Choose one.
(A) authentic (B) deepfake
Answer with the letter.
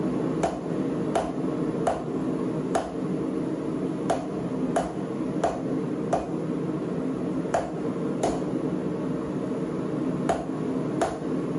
A